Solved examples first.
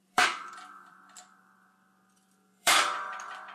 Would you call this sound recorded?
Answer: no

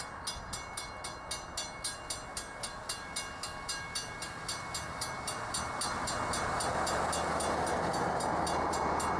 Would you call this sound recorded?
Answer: yes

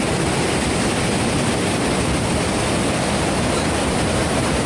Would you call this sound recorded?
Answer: no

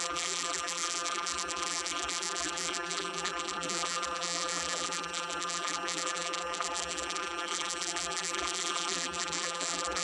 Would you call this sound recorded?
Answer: no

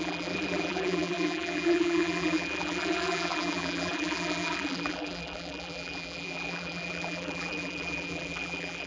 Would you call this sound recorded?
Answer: no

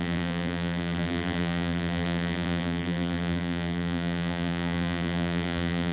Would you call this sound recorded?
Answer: no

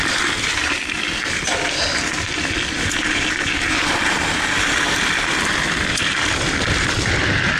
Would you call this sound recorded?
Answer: yes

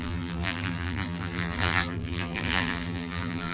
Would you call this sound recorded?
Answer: no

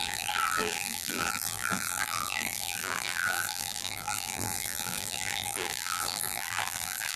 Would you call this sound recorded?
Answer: no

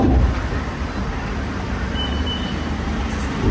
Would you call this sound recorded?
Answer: no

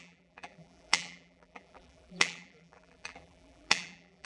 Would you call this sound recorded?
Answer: no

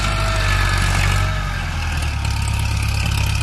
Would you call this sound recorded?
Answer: yes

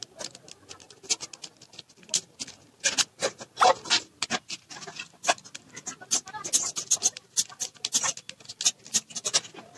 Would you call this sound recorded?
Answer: yes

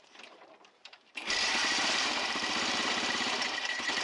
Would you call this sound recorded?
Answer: no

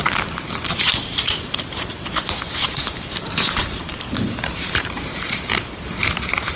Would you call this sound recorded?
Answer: no